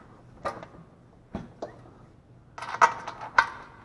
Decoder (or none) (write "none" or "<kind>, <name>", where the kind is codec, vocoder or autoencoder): none